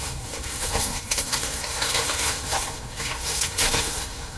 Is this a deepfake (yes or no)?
yes